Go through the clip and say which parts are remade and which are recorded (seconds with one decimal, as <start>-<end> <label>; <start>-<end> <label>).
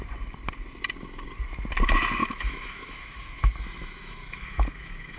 0.0-2.2 recorded; 2.2-5.2 remade